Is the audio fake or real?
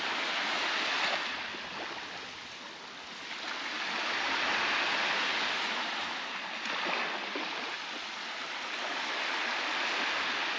real